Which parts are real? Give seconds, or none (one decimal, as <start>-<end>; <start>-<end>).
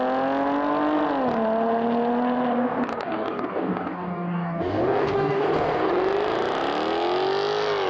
0.0-2.9; 5.9-7.9